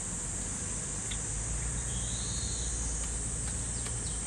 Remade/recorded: recorded